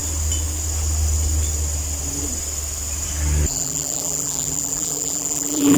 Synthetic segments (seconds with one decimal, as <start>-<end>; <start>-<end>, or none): 3.5-5.8